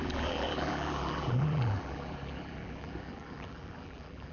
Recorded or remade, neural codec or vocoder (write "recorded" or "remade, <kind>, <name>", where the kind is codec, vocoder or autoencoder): remade, vocoder, BigVGAN v2